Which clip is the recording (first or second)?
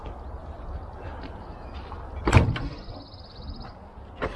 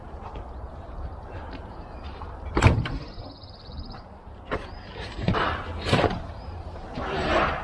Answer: first